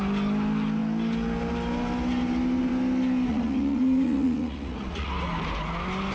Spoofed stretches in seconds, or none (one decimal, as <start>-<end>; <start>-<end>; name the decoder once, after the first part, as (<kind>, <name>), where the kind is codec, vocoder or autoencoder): 3.3-5.1 (vocoder, Vocos)